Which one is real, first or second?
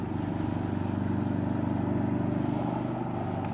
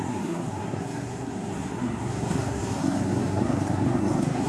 first